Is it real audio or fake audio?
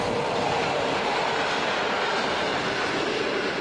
real